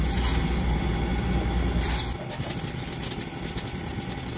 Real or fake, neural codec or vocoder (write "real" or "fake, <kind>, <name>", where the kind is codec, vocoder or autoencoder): real